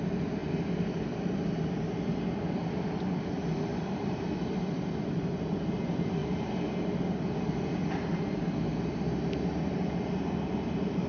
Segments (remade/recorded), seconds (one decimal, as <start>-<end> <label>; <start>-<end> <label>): 0.0-0.4 recorded; 0.4-1.8 remade; 1.8-3.7 recorded; 3.7-5.0 remade; 5.0-11.1 recorded